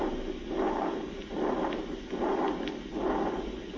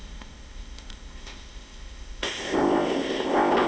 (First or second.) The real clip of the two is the first